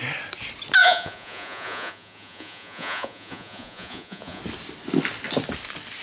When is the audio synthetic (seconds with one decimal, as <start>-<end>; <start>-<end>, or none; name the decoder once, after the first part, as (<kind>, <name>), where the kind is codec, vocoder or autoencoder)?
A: 0.8-4.4 (vocoder, Vocos)